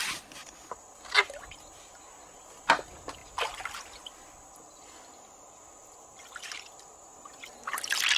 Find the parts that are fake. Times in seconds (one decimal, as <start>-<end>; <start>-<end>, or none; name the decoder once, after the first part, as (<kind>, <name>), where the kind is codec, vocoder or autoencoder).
0.4-1.0 (vocoder, BigVGAN v2)